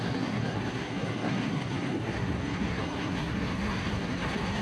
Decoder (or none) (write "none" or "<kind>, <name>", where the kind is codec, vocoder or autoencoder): codec, SNAC